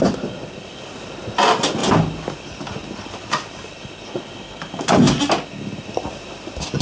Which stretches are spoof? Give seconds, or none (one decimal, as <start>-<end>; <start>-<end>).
none